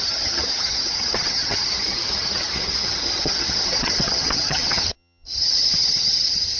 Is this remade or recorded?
remade